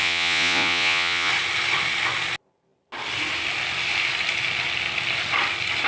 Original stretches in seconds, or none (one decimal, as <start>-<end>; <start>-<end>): 1.3-5.9